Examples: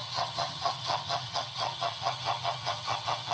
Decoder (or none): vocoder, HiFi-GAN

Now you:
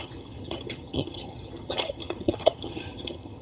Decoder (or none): vocoder, HiFi-GAN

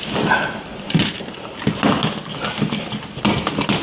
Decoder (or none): none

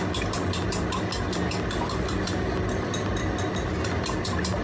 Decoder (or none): none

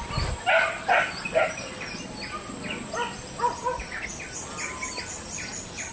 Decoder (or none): none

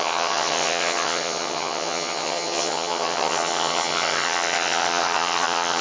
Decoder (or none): vocoder, HiFi-GAN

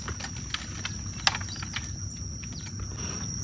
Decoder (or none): none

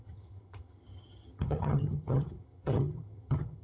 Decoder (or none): vocoder, HiFi-GAN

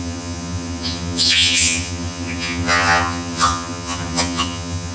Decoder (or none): vocoder, HiFi-GAN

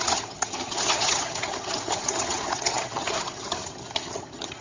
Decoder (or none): vocoder, HiFi-GAN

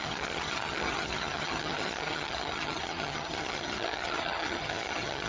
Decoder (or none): vocoder, HiFi-GAN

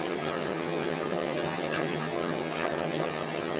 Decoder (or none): vocoder, HiFi-GAN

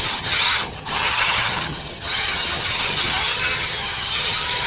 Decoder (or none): vocoder, HiFi-GAN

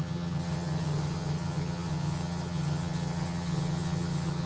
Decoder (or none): vocoder, HiFi-GAN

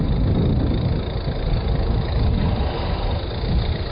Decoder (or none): none